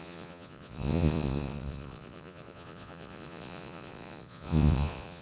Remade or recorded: remade